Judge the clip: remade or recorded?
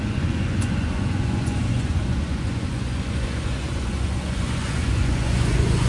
remade